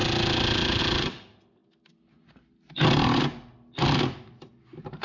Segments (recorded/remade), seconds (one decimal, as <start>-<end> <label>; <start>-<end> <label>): 0.0-5.0 recorded